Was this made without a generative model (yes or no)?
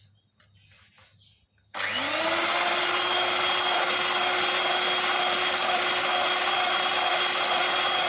yes